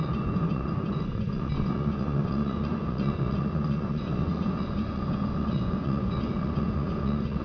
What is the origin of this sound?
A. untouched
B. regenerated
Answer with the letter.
B